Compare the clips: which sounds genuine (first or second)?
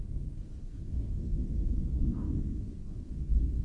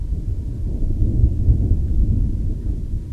second